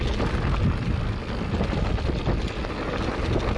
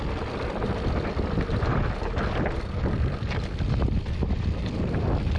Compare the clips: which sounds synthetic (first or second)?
second